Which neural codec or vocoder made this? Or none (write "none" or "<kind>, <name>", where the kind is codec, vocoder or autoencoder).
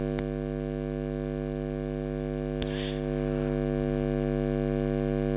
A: none